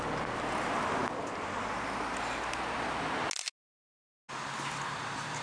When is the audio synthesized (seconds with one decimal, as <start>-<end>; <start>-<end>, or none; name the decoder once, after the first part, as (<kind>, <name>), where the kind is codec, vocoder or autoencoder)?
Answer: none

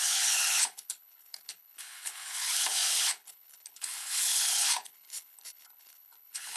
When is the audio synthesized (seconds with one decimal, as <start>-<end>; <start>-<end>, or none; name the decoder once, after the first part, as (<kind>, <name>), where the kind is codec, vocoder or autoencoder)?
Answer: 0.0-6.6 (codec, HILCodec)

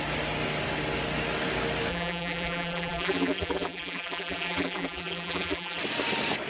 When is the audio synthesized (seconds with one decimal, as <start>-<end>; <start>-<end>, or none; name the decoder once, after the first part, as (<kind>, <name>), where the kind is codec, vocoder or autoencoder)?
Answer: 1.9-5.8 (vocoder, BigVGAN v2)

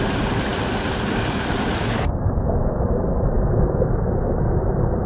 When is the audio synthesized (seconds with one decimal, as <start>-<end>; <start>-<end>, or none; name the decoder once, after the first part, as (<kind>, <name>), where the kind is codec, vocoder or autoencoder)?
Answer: none

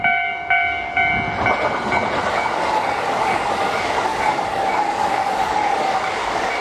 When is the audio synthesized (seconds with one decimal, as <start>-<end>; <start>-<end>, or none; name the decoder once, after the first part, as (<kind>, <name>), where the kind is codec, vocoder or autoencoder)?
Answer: 0.0-1.1 (codec, DAC); 2.3-6.6

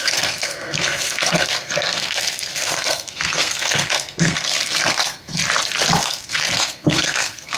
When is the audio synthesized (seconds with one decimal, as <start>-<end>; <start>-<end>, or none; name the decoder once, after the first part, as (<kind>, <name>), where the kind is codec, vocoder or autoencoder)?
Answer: 0.0-5.4 (codec, SNAC); 6.0-7.6